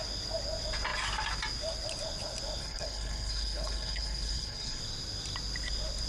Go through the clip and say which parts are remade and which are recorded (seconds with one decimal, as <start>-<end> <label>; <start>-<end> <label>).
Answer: 0.0-2.6 recorded; 2.6-4.8 remade; 4.8-6.1 recorded